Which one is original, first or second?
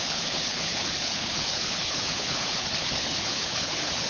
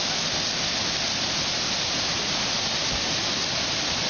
second